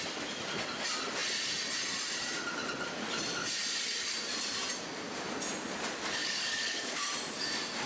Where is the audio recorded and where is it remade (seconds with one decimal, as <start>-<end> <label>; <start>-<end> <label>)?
0.0-6.2 recorded; 6.2-7.1 remade; 7.1-7.9 recorded